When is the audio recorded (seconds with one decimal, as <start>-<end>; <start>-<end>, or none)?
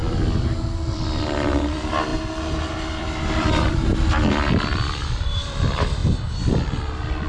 2.1-2.7